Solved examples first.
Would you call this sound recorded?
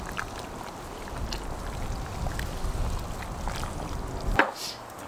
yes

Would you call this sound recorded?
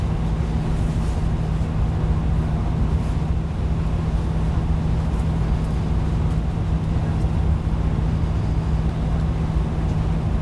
yes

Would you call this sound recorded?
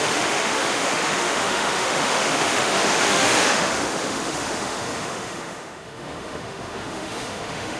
no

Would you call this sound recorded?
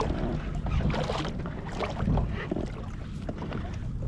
yes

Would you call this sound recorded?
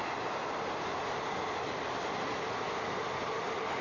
yes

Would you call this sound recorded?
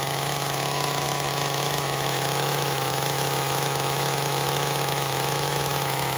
no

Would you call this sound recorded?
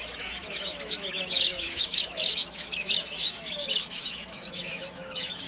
no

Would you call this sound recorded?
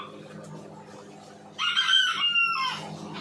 yes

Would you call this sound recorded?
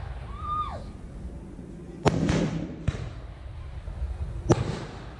yes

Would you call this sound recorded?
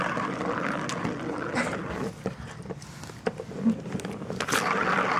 yes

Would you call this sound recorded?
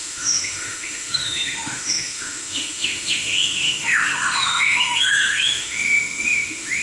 no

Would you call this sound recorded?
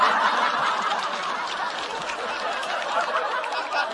yes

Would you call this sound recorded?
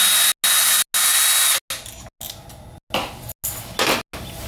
yes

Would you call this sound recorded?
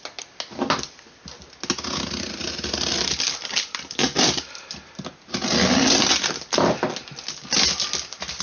yes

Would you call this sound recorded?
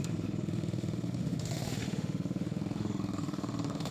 no